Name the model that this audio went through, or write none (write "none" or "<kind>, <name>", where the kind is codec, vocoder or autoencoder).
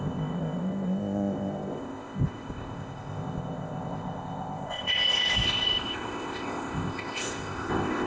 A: codec, ZipCodec